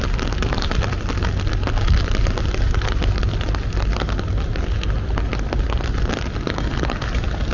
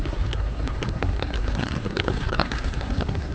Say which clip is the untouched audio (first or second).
first